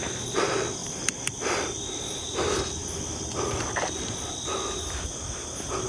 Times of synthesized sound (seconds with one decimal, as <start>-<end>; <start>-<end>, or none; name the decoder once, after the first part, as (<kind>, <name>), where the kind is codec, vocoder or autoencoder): none